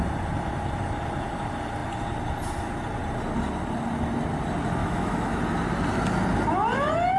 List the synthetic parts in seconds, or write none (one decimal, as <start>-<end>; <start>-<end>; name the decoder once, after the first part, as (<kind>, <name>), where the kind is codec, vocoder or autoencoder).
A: 4.8-5.4 (autoencoder, DAC-VAE)